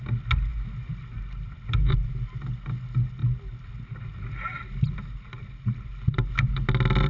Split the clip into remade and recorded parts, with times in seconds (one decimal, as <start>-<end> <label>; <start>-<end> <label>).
0.0-7.1 recorded